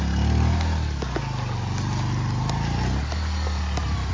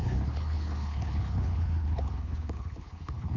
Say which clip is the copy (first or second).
second